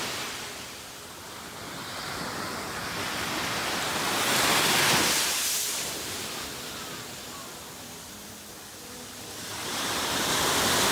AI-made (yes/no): no